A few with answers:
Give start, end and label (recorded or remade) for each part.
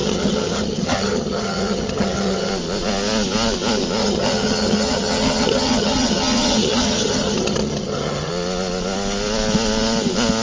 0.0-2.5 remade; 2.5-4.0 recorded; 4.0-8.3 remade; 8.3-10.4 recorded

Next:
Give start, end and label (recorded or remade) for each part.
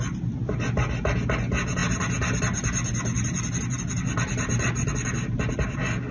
0.0-6.1 recorded